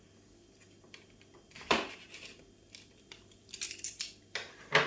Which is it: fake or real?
real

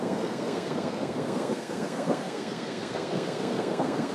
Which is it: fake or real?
fake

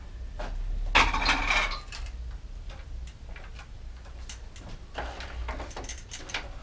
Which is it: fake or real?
real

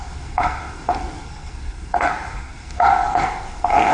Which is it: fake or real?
fake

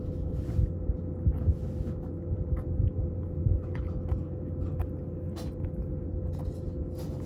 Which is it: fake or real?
real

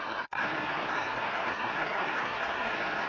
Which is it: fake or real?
fake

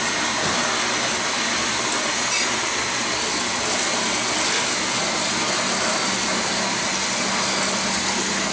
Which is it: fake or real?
real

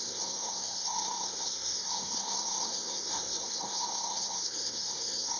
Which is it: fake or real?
fake